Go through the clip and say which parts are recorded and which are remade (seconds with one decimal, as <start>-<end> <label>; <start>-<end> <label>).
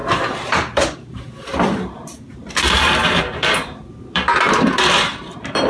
0.0-5.7 remade